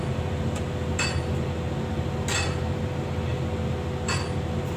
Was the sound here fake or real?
real